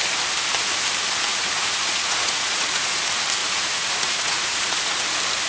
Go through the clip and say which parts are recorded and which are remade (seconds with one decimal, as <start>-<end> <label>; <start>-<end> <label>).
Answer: 0.0-1.3 recorded; 1.3-3.0 remade; 3.0-3.4 recorded; 3.4-4.8 remade; 4.8-5.5 recorded